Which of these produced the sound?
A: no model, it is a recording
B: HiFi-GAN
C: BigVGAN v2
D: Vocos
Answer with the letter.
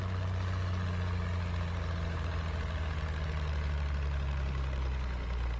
A